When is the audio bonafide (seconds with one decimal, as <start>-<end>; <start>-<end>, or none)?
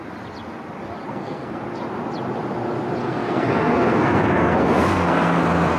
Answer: 0.0-1.1; 1.6-3.0